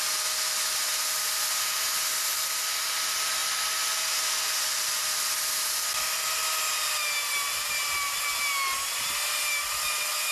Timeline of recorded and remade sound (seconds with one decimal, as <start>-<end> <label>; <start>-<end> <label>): 0.0-10.3 recorded